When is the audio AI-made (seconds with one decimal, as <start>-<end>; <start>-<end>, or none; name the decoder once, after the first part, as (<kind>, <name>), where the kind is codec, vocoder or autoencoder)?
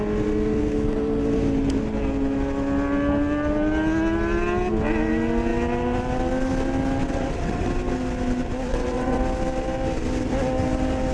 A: 7.0-7.7 (vocoder, WaveNeXt); 8.7-9.2